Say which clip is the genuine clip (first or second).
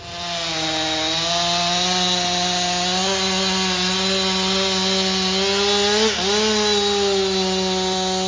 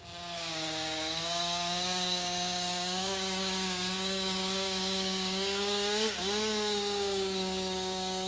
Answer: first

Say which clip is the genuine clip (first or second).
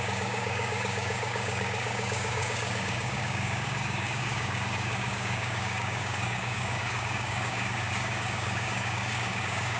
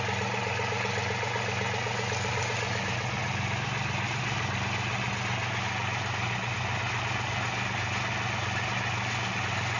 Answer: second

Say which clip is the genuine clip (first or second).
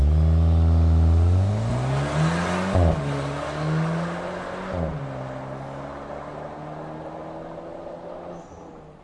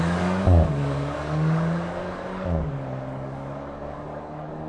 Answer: first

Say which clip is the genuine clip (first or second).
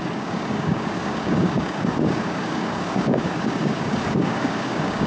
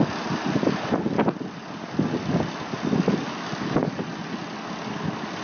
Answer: second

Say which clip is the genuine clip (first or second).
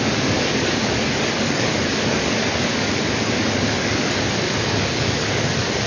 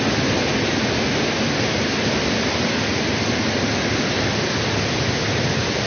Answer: second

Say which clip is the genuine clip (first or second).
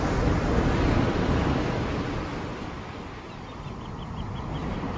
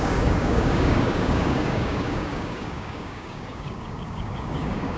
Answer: first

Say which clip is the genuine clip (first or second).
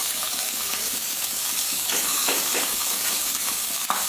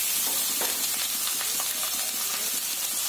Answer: second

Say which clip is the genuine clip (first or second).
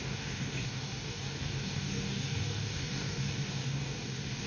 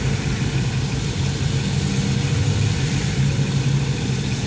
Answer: second